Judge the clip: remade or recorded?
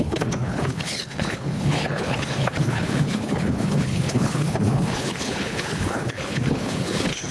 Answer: remade